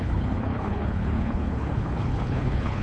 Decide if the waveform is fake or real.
fake